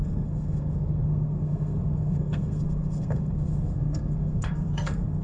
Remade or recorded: remade